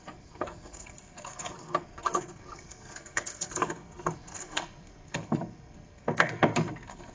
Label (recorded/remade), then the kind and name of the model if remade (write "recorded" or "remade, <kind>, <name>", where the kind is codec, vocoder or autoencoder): remade, codec, SNAC